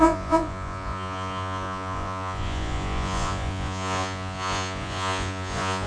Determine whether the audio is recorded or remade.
remade